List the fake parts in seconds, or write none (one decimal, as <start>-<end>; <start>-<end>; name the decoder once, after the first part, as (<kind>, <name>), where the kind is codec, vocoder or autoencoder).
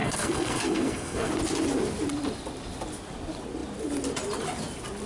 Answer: 0.0-1.3 (codec, SNAC)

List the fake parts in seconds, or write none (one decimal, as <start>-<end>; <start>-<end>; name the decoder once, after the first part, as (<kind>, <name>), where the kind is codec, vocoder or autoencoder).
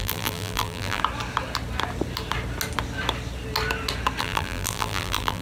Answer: 0.0-1.0 (vocoder, BigVGAN v2); 4.2-5.4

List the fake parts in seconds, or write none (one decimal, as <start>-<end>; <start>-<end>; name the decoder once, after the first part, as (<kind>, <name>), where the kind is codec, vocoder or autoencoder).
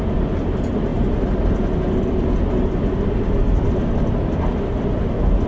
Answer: none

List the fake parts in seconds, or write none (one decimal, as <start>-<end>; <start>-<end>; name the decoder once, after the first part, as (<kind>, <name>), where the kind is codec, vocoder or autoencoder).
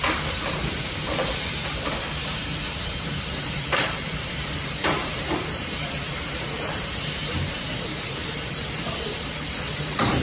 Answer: 0.0-10.2 (vocoder, BigVGAN v2)